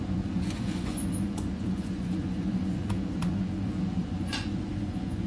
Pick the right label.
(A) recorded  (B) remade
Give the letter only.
B